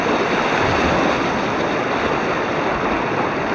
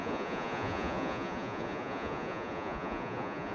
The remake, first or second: second